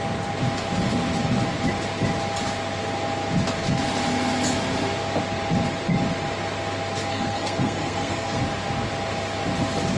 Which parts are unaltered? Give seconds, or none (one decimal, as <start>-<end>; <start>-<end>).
0.0-7.1; 8.4-10.0